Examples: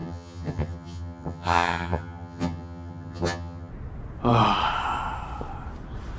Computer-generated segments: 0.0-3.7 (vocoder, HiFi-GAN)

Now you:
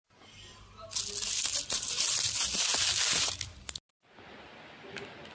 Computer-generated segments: none

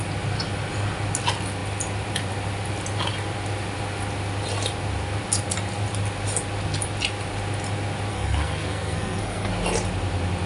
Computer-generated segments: 8.1-9.5 (codec, SNAC)

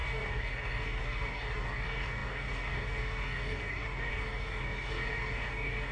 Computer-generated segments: 0.0-5.9 (codec, DAC)

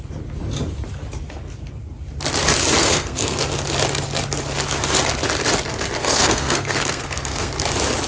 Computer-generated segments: 2.8-3.4 (codec, SNAC); 6.0-7.5